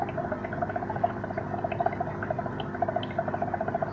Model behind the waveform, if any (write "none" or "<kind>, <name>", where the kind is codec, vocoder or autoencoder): none